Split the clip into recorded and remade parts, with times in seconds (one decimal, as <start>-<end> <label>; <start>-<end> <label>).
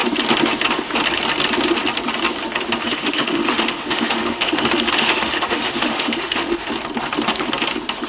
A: 0.0-2.8 recorded; 2.8-6.7 remade; 6.7-8.1 recorded